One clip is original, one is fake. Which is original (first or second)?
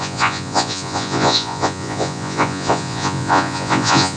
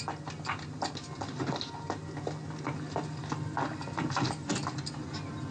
second